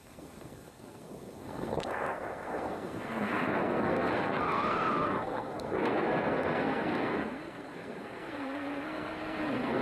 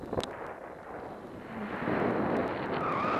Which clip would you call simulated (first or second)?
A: first